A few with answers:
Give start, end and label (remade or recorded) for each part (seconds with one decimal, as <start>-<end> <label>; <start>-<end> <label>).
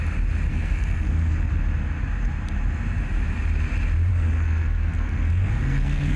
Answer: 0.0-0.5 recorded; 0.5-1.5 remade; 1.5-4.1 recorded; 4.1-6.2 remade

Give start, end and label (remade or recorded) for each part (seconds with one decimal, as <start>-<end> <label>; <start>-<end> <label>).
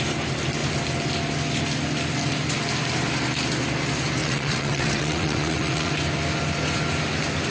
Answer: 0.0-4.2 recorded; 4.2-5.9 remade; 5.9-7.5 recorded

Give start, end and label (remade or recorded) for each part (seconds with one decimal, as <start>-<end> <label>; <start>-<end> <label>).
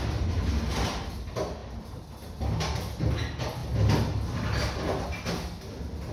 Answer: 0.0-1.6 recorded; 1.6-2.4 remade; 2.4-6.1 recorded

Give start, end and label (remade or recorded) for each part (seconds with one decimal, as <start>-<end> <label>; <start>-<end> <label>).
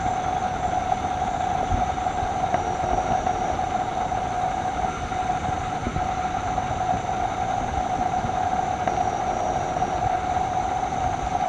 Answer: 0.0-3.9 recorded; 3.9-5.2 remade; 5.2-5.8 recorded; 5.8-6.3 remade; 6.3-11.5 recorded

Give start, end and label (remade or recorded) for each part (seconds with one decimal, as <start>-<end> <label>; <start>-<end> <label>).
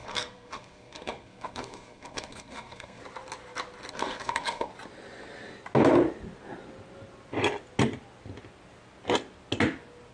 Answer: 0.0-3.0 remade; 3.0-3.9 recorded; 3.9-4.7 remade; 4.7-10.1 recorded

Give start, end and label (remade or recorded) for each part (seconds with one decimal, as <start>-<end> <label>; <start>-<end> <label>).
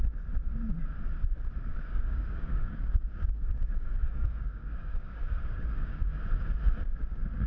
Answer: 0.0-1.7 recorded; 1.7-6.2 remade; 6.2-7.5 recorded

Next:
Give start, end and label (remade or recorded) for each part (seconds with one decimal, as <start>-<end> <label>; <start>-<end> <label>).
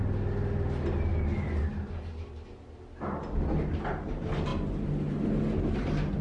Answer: 0.0-6.2 recorded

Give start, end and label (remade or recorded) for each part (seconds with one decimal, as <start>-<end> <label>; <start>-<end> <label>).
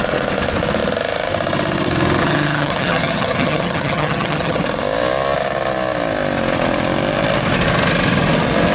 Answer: 0.0-2.2 recorded; 2.2-4.6 remade; 4.6-8.7 recorded